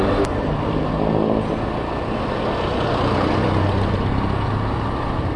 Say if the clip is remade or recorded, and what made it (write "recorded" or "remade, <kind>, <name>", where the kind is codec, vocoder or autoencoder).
recorded